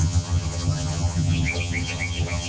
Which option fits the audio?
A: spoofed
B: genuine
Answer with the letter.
A